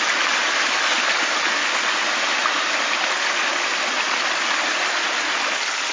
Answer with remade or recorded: recorded